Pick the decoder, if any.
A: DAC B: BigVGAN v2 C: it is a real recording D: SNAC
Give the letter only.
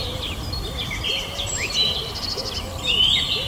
B